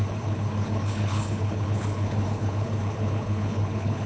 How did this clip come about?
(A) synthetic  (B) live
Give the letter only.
A